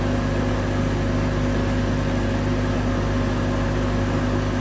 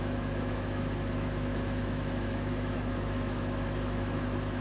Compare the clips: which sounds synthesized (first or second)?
second